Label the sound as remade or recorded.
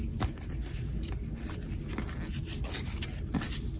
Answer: recorded